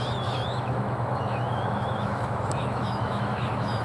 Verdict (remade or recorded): remade